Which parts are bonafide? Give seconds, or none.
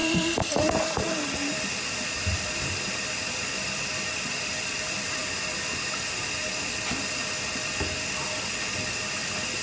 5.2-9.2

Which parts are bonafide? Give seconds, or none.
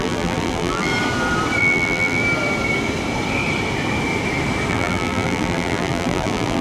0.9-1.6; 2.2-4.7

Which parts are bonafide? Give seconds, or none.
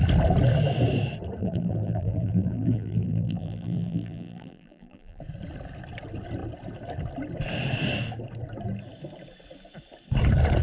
0.0-1.4; 5.2-10.6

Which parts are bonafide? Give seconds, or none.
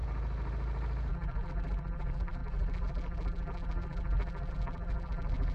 0.0-1.1